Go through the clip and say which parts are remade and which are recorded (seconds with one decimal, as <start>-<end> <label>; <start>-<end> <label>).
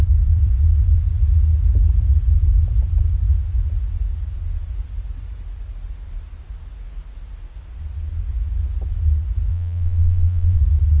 0.0-9.5 recorded; 9.5-10.6 remade; 10.6-11.0 recorded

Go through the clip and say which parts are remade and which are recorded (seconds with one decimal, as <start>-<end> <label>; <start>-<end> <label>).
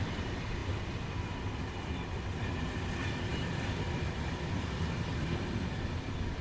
0.0-6.4 remade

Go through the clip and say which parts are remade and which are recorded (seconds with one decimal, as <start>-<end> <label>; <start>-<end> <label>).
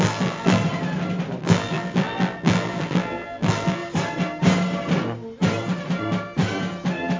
0.0-0.6 remade; 0.6-1.4 recorded; 1.4-3.8 remade; 3.8-7.2 recorded